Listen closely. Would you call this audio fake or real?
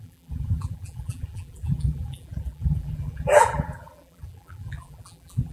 fake